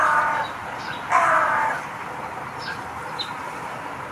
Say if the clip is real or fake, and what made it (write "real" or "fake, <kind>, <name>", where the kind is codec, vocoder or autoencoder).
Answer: real